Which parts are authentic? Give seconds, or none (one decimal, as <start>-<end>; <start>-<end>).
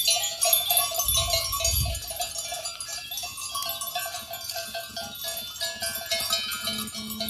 0.0-7.3